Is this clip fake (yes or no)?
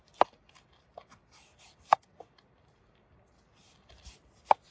no